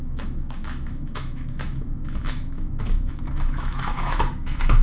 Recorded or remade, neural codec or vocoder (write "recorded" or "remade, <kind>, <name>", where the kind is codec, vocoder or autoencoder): remade, autoencoder, DAC-VAE